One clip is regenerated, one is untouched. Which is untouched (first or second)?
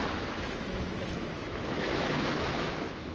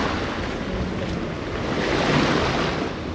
second